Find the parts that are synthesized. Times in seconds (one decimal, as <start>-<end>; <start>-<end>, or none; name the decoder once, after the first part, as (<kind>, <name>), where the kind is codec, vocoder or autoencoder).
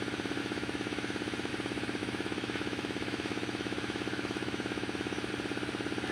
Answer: 0.4-1.5 (autoencoder, DAC-VAE); 2.0-5.3